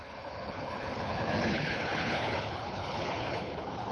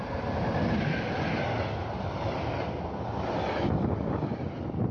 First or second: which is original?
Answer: second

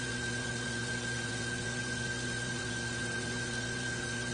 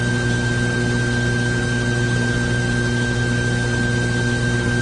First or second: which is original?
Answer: second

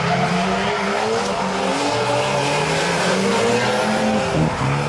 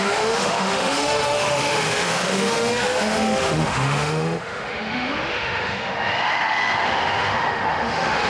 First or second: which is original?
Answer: first